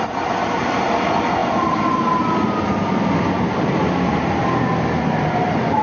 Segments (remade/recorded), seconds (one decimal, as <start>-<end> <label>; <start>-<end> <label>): 0.0-5.8 recorded